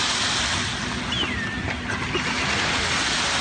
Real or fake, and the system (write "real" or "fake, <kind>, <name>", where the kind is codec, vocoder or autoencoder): real